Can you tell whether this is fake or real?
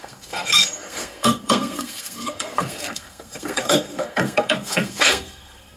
fake